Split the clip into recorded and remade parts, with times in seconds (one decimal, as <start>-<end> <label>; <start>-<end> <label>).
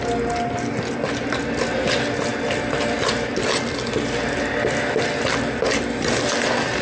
0.0-6.8 recorded